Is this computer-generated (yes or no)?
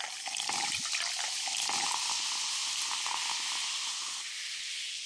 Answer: no